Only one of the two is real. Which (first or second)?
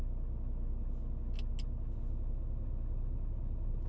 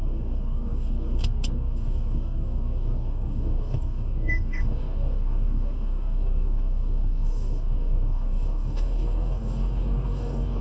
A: first